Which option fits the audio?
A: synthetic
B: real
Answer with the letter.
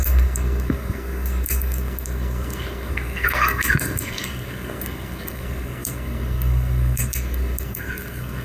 A